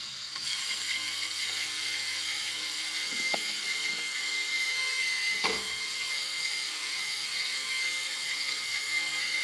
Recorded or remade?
remade